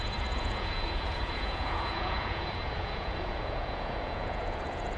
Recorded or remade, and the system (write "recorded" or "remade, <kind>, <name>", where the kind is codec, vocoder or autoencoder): remade, vocoder, Vocos